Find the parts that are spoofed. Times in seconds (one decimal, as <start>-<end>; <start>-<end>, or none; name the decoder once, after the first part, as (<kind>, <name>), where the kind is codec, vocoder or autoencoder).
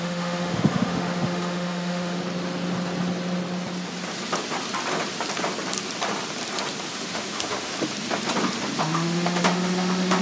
0.0-2.2 (autoencoder, DAC-VAE); 6.9-7.7; 8.8-10.2